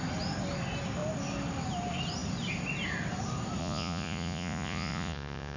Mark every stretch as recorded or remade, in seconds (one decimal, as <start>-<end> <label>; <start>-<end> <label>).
0.0-3.6 recorded; 3.6-5.6 remade